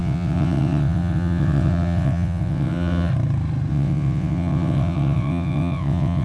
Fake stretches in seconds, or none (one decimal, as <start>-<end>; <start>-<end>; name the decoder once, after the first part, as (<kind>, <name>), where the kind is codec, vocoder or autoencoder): 0.0-3.1 (vocoder, WaveNeXt); 3.7-6.2